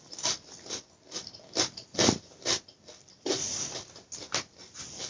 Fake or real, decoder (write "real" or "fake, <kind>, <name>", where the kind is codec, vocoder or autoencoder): real